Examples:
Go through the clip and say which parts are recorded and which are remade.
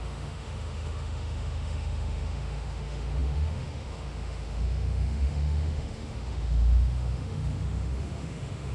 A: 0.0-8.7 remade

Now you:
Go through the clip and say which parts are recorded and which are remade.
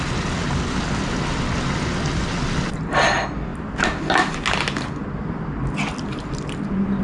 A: 0.0-7.0 recorded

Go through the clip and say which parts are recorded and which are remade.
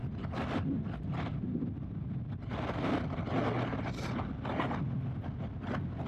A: 0.0-6.1 recorded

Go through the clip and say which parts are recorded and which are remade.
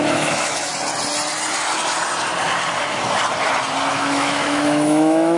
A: 0.0-0.7 remade; 0.7-3.9 recorded; 3.9-5.4 remade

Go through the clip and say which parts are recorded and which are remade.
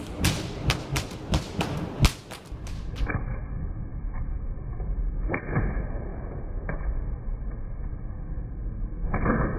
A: 0.0-6.1 recorded; 6.1-6.8 remade; 6.8-9.6 recorded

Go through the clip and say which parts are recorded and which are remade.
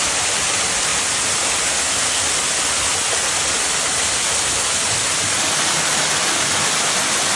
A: 0.0-7.4 recorded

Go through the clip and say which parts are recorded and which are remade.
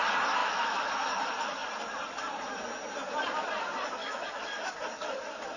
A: 0.0-0.4 recorded; 0.4-1.2 remade; 1.2-4.0 recorded; 4.0-4.7 remade; 4.7-5.6 recorded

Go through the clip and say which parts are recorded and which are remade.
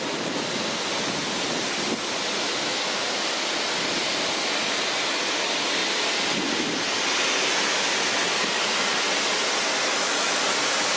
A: 0.0-9.9 recorded; 9.9-10.4 remade; 10.4-11.0 recorded